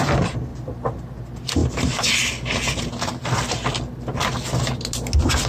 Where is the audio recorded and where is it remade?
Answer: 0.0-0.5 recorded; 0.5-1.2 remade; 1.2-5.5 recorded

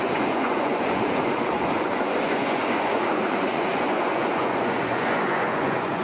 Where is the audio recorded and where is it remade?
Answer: 0.0-6.0 remade

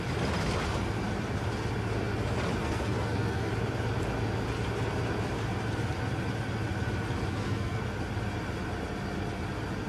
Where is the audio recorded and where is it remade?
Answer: 0.0-2.6 recorded; 2.6-3.5 remade; 3.5-7.3 recorded; 7.3-7.8 remade; 7.8-9.9 recorded

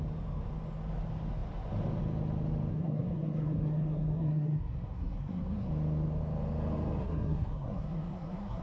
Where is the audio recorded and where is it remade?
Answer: 0.0-2.7 recorded; 2.7-5.7 remade; 5.7-7.0 recorded; 7.0-8.6 remade